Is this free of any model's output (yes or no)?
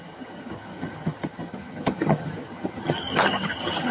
no